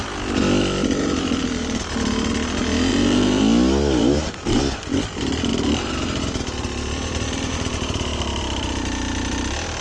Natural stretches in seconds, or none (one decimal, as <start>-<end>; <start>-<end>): 0.0-1.4; 2.3-2.9; 3.4-5.5; 8.4-9.8

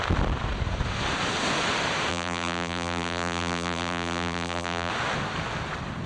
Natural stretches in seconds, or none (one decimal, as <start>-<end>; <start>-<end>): 0.0-2.1; 4.9-6.1

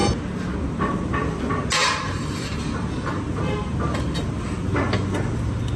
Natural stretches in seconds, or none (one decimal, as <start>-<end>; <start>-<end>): 0.0-1.8; 3.2-5.8

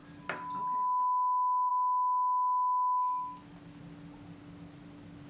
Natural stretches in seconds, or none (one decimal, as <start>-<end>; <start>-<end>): 0.0-5.3

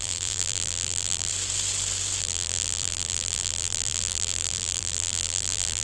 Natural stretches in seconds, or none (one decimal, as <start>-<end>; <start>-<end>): 1.3-2.2

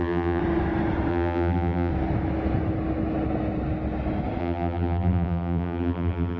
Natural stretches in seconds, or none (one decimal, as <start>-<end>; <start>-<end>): 0.4-1.1; 1.9-4.4

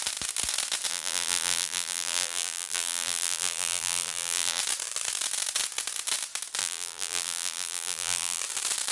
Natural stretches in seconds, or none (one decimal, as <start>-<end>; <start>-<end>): 0.0-0.9; 4.6-6.6; 8.4-8.9